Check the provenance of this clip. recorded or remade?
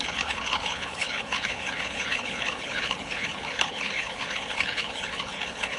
remade